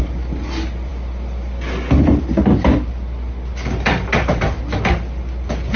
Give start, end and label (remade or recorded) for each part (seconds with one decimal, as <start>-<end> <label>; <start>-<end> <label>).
0.0-5.8 recorded

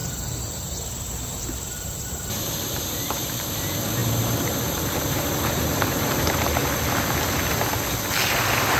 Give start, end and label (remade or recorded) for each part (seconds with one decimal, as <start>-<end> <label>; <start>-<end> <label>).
0.0-6.6 remade; 6.6-8.8 recorded

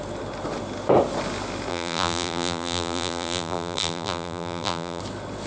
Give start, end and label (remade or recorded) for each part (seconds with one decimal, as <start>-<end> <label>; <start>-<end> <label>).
0.0-1.7 recorded; 1.7-5.0 remade; 5.0-5.5 recorded

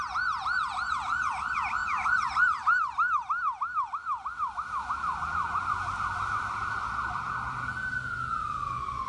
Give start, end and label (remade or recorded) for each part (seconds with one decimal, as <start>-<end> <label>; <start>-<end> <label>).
0.0-9.1 remade